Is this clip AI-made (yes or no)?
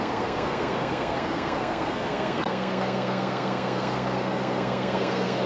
yes